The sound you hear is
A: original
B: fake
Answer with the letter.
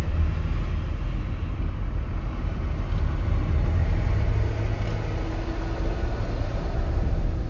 A